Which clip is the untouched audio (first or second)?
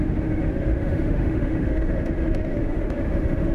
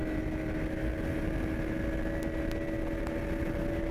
second